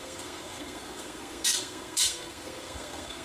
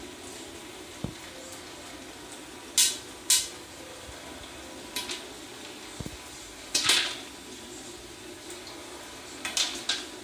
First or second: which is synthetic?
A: first